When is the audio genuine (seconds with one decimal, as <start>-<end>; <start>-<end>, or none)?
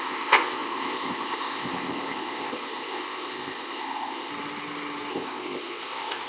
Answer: 4.3-5.1